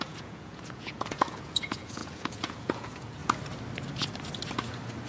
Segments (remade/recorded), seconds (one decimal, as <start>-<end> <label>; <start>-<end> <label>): 0.0-3.2 remade; 3.2-5.1 recorded